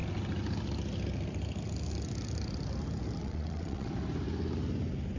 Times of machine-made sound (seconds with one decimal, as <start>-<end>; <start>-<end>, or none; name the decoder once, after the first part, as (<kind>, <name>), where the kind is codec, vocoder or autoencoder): 3.2-3.9 (vocoder, WaveNeXt)